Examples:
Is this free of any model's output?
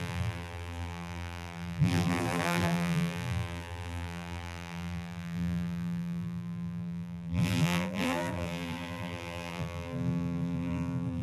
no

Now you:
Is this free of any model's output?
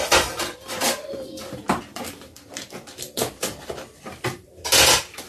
no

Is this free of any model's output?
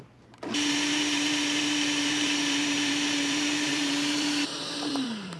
no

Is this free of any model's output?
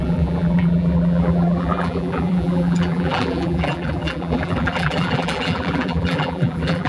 no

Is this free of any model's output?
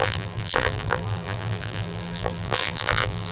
no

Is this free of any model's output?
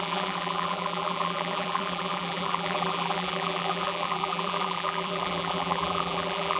no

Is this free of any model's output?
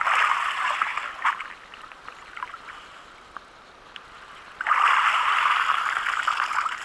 yes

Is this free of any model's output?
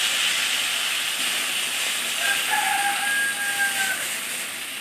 yes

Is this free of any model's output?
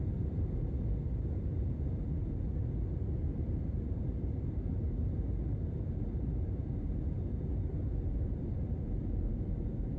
no